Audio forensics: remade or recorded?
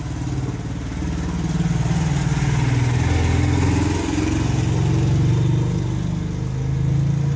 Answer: recorded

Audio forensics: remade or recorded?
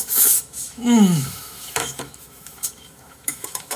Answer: remade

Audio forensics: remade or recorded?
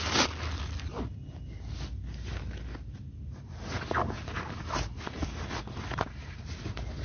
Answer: recorded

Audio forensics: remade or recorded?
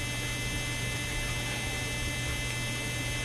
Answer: recorded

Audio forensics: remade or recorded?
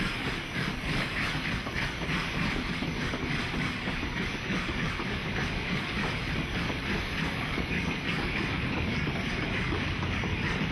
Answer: remade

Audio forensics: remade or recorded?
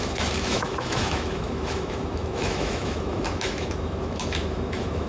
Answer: remade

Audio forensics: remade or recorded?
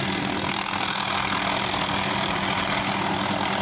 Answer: recorded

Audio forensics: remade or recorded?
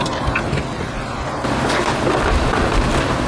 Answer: remade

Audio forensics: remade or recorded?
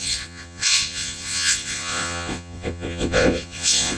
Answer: remade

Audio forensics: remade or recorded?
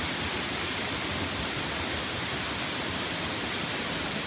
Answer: recorded